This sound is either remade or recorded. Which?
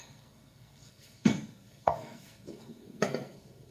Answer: remade